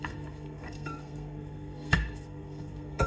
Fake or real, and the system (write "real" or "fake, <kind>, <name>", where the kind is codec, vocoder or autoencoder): fake, codec, SNAC